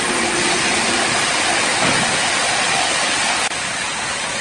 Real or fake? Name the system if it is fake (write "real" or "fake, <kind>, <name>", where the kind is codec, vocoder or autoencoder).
real